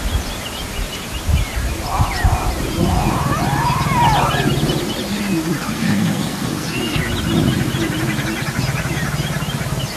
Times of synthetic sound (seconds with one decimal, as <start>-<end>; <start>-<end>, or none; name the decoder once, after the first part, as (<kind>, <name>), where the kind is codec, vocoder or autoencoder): 5.6-7.0 (codec, SNAC)